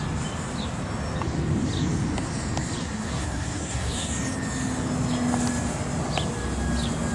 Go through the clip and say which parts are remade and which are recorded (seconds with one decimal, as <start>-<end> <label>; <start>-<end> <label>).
0.0-2.8 recorded; 2.8-4.1 remade; 4.1-7.1 recorded